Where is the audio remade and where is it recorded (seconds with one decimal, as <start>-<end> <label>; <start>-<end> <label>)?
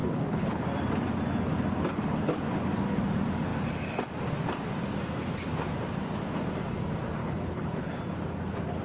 0.0-0.6 remade; 0.6-1.9 recorded; 1.9-2.4 remade; 2.4-7.2 recorded; 7.2-8.0 remade; 8.0-8.8 recorded